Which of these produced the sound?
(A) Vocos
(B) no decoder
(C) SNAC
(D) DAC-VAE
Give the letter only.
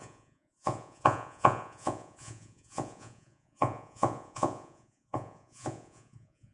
A